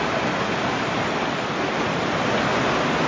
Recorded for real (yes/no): yes